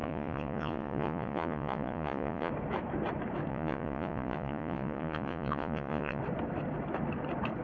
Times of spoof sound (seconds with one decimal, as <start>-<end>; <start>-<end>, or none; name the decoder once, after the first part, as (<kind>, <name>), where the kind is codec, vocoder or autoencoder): 0.0-2.5 (vocoder, Vocos); 3.5-6.2

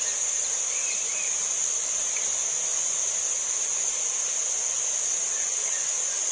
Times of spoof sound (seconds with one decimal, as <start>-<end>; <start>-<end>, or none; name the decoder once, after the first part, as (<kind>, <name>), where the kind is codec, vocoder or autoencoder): none

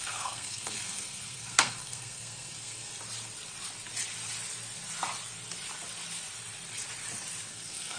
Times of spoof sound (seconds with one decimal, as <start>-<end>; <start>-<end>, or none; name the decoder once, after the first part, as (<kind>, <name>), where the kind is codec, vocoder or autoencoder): 0.0-2.9 (codec, SNAC); 7.5-8.0

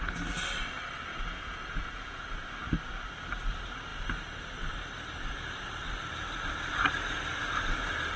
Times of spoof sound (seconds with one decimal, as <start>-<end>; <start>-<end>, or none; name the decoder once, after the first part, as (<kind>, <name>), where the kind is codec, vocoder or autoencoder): 1.1-2.3 (vocoder, Vocos)

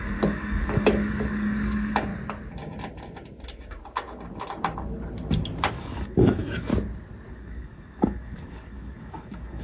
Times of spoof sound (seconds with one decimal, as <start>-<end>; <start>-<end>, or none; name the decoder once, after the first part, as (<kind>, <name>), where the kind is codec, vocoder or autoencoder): 0.0-2.1 (codec, DAC); 5.7-6.7; 7.3-9.6

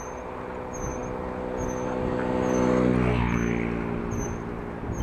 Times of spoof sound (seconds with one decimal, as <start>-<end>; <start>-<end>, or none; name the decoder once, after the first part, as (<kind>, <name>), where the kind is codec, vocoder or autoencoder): none